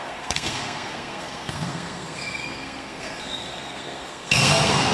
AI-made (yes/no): yes